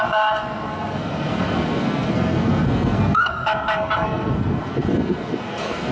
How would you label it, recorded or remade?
remade